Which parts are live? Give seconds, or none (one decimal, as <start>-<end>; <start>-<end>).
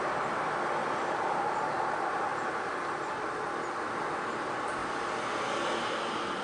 0.0-0.8; 1.5-2.3; 3.3-6.4